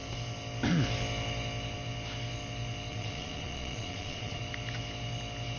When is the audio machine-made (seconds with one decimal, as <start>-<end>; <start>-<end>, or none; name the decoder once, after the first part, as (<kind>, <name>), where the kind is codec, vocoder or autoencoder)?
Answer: 2.9-4.4 (vocoder, Vocos)

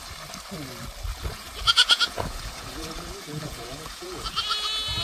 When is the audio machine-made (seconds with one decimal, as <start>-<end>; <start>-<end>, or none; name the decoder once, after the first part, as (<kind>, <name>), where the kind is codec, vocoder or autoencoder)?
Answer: 1.3-4.3 (vocoder, Vocos)